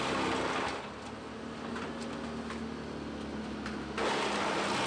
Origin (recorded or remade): recorded